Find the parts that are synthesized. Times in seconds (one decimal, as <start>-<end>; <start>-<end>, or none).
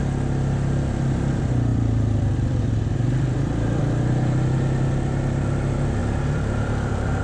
1.7-3.8; 6.0-7.2